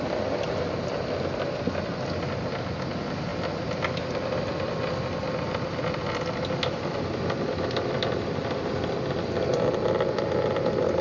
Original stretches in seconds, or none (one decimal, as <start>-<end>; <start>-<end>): 0.0-11.0